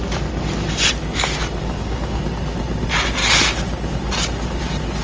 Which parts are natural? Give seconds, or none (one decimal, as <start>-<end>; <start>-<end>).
0.0-1.6; 2.2-5.0